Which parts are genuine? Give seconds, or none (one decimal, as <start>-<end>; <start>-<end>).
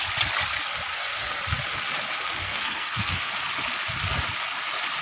0.0-0.9; 1.4-2.4; 3.3-5.0